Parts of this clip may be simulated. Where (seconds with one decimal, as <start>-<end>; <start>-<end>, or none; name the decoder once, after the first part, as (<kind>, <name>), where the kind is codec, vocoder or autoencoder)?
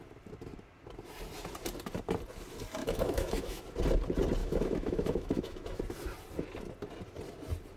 2.8-3.6 (autoencoder, DAC-VAE); 4.4-5.8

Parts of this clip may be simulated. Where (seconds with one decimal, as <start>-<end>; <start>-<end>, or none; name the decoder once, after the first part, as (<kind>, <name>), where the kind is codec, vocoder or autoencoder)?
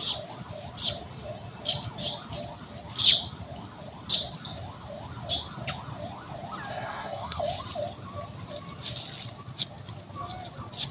6.7-7.4 (codec, SNAC)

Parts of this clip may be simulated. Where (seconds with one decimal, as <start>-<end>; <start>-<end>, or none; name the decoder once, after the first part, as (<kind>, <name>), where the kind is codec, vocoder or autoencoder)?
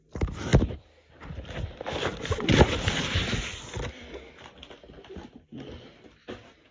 none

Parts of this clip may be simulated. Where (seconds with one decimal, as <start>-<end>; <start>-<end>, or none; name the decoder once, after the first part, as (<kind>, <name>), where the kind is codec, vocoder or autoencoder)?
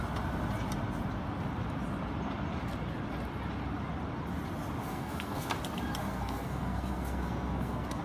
4.8-5.5 (codec, SNAC); 6.0-8.0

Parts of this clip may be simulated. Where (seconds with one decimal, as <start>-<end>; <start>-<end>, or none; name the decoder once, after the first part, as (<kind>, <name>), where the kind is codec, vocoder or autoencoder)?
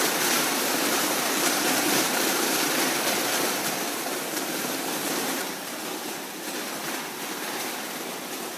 0.0-5.8 (vocoder, BigVGAN v2)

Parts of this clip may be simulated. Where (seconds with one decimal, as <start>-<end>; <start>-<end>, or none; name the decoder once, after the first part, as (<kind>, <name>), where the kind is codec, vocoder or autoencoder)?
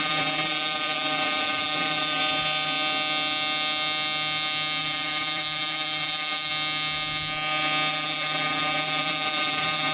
0.0-2.2 (vocoder, BigVGAN v2); 4.8-6.5; 7.9-9.9